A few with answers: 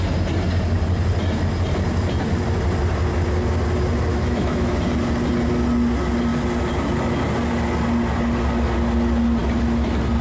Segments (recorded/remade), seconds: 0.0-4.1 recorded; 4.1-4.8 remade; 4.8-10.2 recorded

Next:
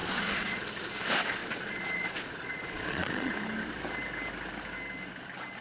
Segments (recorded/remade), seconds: 0.0-0.6 remade; 0.6-1.4 recorded; 1.4-3.3 remade; 3.3-5.6 recorded

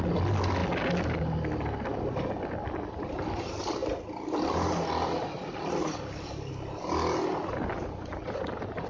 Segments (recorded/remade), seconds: 0.0-8.9 recorded

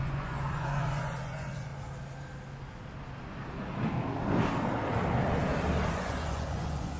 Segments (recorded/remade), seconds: 0.0-1.7 remade; 1.7-5.9 recorded; 5.9-7.0 remade

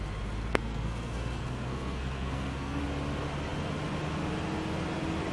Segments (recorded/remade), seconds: 0.0-0.5 recorded; 0.5-2.8 remade; 2.8-5.3 recorded